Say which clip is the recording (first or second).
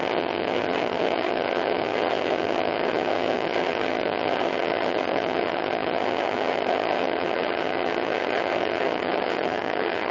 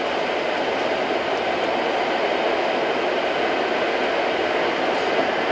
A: second